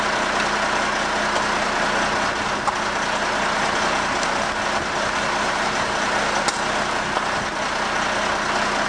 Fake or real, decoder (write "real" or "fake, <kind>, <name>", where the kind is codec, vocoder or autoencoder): real